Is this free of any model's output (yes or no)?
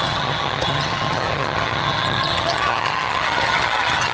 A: no